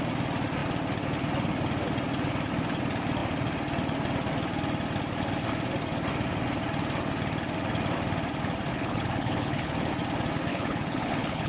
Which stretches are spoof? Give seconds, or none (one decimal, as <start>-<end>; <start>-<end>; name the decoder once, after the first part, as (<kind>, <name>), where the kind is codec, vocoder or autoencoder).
8.7-9.9 (codec, HILCodec); 10.5-11.5